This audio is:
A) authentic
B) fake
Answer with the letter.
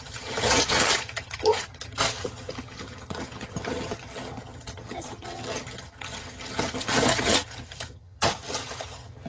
B